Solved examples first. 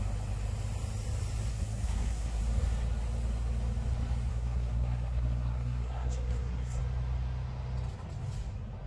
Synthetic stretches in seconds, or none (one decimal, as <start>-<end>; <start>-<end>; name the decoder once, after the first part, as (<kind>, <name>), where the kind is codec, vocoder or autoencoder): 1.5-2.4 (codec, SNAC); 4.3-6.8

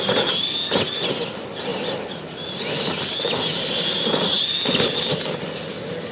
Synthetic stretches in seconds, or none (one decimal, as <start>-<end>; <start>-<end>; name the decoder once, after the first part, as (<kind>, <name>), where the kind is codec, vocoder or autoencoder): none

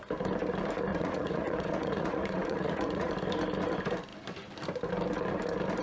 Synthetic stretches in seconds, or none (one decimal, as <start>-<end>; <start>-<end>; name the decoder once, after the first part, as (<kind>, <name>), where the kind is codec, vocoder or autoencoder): 0.9-3.1 (vocoder, Vocos)

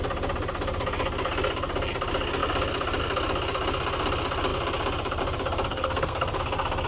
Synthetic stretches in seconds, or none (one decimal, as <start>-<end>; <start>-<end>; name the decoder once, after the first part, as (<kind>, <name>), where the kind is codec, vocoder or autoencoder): 5.7-6.4 (codec, SNAC)

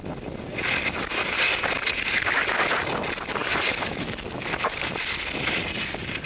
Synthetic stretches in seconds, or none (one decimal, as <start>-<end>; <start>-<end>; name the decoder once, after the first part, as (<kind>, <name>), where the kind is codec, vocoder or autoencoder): 3.4-4.9 (codec, DAC)

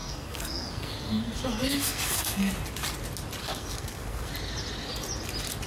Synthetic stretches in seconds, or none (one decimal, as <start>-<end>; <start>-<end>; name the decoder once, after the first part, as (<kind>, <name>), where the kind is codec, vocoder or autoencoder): 0.0-2.5 (codec, SNAC); 3.4-4.3